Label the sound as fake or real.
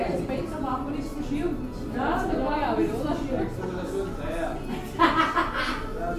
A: real